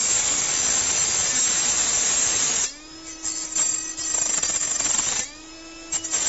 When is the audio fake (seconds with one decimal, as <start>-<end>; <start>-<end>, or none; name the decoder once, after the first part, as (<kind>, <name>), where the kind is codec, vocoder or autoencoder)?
none